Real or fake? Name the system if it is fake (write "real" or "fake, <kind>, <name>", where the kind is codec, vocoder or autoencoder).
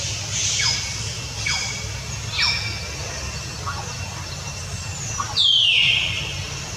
real